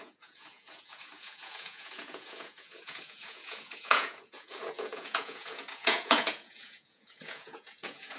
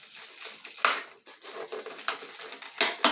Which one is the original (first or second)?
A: second